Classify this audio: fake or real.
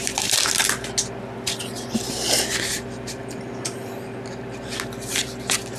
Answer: real